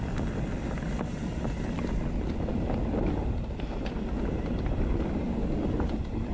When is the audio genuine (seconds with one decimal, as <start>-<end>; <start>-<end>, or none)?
0.0-6.3